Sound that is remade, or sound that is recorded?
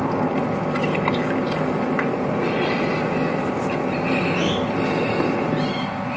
recorded